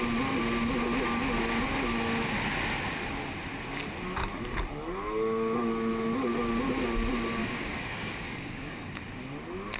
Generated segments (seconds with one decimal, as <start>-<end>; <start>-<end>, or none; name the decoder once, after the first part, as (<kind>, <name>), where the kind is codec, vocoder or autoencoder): 7.4-8.9 (codec, DAC)